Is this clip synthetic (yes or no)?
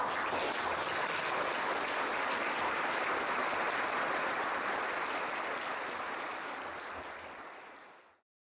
no